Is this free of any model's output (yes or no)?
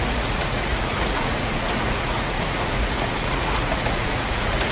no